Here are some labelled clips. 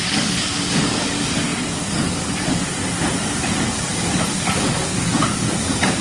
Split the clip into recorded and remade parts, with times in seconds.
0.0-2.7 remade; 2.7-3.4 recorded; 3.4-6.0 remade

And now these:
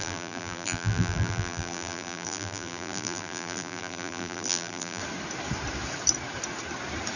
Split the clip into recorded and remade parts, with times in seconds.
0.0-5.0 remade; 5.0-7.2 recorded